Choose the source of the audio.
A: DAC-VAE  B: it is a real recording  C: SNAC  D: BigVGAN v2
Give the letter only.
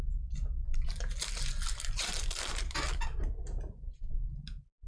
B